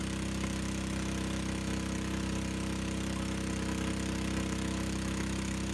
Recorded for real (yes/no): yes